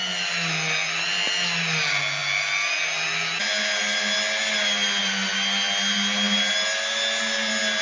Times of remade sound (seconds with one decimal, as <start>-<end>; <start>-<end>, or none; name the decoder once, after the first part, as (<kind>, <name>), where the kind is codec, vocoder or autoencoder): none